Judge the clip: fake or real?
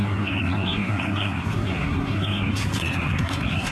fake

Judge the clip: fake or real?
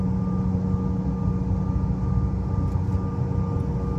real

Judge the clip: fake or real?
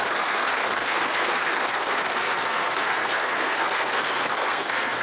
fake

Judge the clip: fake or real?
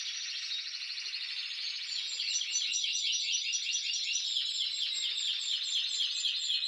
real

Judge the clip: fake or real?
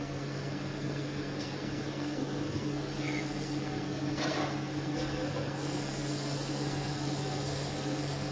fake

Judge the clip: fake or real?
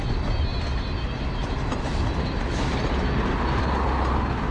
real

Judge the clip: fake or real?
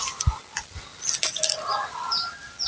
real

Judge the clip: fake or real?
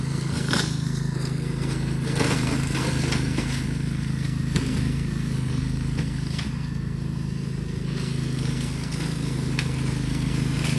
fake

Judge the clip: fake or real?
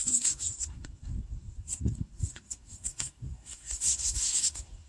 fake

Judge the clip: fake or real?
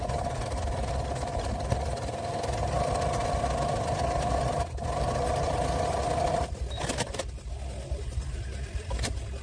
real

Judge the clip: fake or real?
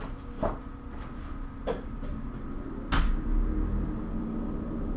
real